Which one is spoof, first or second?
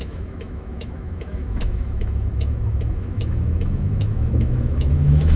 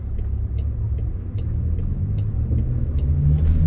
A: first